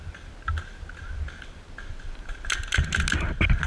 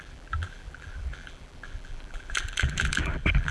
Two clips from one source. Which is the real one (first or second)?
first